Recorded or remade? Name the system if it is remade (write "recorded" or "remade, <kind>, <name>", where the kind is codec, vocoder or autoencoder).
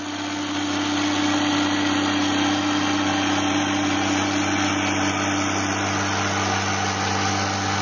recorded